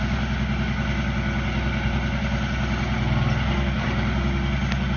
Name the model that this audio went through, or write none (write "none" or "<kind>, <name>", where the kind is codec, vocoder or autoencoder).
none